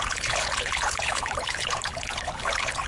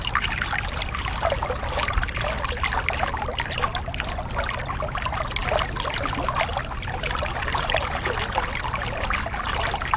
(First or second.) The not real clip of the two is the first